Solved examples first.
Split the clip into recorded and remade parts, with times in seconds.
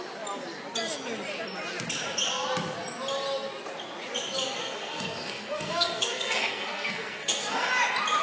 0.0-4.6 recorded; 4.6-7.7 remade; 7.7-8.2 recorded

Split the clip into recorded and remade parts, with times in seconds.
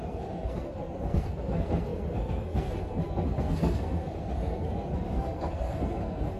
0.0-6.4 remade